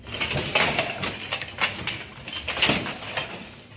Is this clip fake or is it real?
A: real